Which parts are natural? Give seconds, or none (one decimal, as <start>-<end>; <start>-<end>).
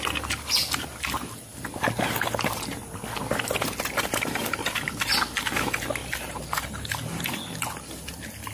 0.0-8.5